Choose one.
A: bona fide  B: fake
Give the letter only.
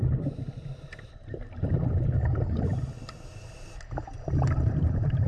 A